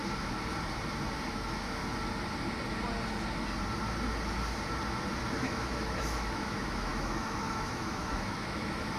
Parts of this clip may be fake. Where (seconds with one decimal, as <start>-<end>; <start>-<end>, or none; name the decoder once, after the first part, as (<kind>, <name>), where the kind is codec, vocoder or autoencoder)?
1.3-1.8 (autoencoder, DAC-VAE); 5.4-9.0